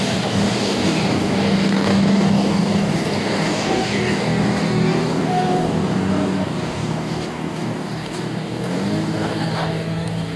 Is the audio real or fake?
fake